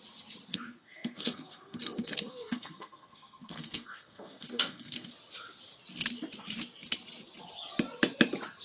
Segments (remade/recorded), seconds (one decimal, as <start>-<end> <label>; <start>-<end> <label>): 0.0-0.5 recorded; 0.5-5.1 remade; 5.1-8.6 recorded